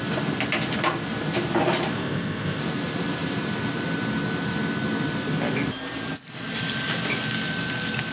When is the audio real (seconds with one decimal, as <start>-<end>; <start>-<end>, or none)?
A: 0.0-1.9; 2.6-8.1